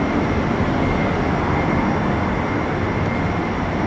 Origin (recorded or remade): recorded